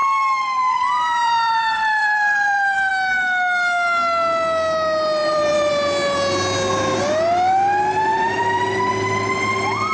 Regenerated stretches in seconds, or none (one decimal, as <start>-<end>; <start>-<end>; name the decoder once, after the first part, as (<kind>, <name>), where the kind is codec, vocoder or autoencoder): 0.0-2.9 (vocoder, BigVGAN v2); 5.2-5.7; 8.1-9.3